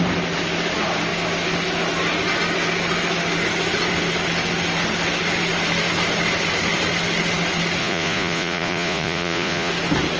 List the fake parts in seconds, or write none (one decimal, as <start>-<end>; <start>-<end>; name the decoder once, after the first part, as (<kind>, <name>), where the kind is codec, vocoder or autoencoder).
7.8-9.7 (vocoder, Vocos)